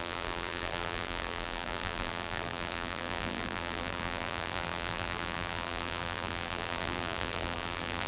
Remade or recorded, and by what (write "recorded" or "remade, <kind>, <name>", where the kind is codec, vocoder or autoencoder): remade, vocoder, BigVGAN v2